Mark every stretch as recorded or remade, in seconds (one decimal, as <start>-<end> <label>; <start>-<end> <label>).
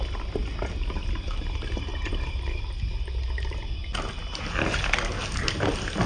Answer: 0.0-1.9 recorded; 1.9-2.6 remade; 2.6-6.1 recorded